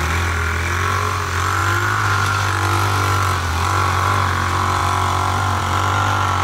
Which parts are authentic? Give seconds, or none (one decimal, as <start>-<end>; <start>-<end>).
0.0-6.4